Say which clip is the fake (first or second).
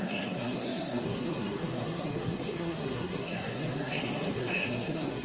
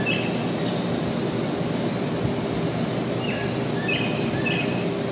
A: first